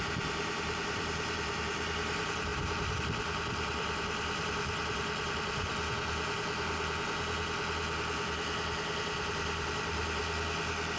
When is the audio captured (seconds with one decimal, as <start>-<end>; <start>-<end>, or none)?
5.7-9.3; 10.2-11.0